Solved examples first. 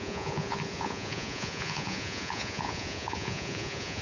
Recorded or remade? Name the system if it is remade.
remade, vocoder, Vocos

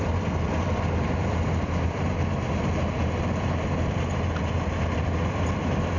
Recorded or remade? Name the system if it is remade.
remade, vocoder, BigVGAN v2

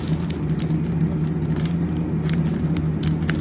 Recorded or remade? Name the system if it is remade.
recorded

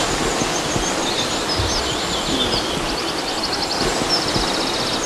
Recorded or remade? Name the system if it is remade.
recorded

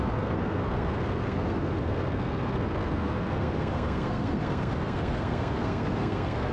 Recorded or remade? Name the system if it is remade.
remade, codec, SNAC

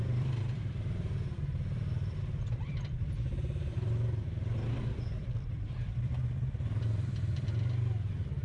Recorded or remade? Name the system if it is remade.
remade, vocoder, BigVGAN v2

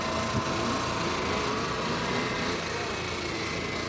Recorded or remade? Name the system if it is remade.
recorded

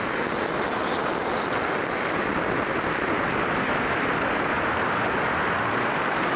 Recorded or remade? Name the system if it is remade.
recorded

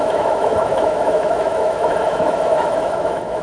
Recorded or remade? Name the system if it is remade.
remade, autoencoder, DAC-VAE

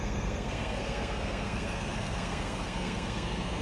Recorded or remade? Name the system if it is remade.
remade, codec, SNAC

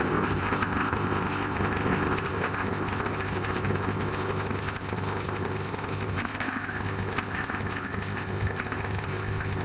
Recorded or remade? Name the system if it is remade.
remade, codec, ZipCodec